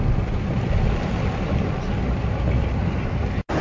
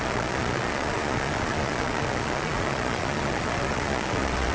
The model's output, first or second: second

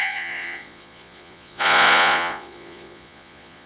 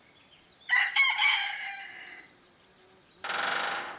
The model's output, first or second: first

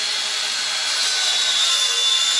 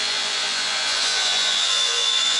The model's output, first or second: second